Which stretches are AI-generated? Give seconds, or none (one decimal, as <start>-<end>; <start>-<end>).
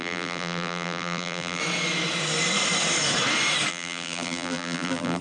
0.0-1.6; 3.7-5.2